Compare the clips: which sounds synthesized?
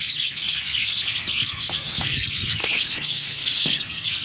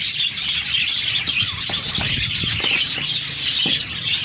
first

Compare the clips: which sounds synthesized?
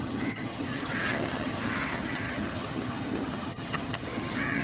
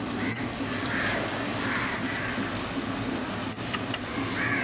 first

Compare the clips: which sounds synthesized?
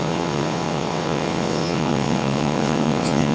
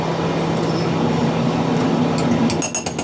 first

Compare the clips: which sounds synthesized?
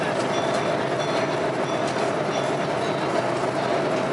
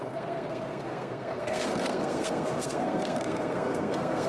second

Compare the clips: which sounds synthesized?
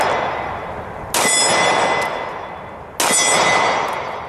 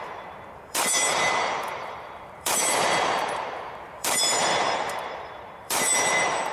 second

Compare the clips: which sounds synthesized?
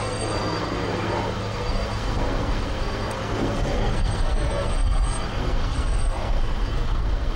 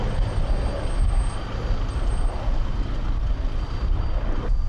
first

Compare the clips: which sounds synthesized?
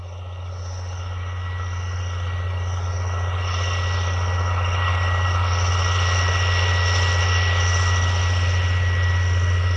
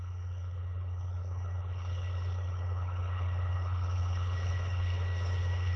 second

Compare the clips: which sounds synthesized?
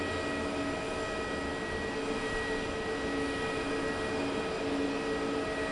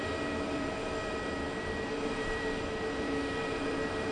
second